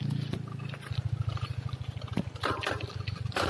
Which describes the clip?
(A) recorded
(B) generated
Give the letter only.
A